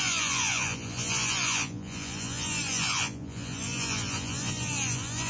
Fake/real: fake